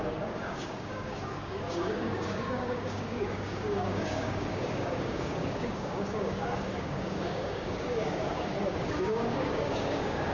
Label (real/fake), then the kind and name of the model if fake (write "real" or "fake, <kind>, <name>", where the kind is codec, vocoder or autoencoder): fake, codec, DAC